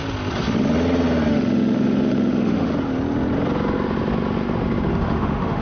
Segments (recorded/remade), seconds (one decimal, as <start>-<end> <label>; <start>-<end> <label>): 0.0-1.3 recorded; 1.3-2.7 remade; 2.7-4.9 recorded; 4.9-5.6 remade